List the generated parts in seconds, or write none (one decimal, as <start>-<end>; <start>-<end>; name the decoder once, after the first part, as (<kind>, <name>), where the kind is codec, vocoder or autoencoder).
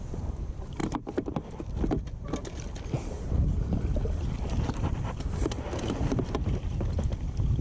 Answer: none